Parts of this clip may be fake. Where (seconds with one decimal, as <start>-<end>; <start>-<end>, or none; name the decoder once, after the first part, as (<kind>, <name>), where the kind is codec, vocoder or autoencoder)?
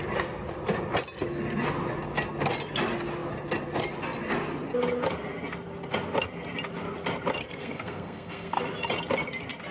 7.4-8.6 (codec, SNAC)